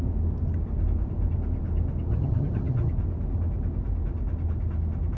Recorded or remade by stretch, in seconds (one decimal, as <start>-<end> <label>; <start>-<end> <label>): 0.0-2.1 recorded; 2.1-2.9 remade; 2.9-5.2 recorded

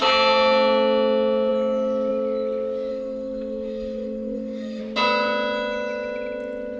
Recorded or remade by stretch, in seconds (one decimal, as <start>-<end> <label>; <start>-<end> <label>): 0.0-2.9 recorded; 2.9-4.8 remade; 4.8-6.8 recorded

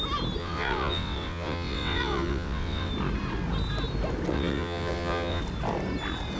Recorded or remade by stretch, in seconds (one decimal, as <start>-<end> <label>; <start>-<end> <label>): 0.0-0.4 recorded; 0.4-2.9 remade; 2.9-4.3 recorded; 4.3-5.4 remade; 5.4-6.4 recorded